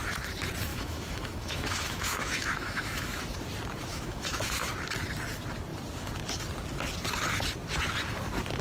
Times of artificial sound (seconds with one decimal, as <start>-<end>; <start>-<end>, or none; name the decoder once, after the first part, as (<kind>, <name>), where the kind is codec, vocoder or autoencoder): 0.7-3.2 (autoencoder, DAC-VAE); 3.9-4.7